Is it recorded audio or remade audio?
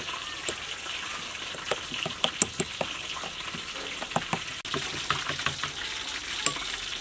recorded